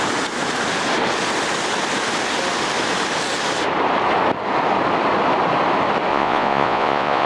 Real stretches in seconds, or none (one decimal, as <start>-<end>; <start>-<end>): 0.0-6.1